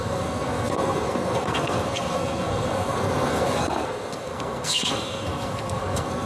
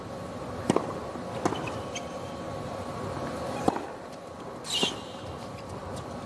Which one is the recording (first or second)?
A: second